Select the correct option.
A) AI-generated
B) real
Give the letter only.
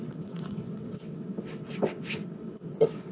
A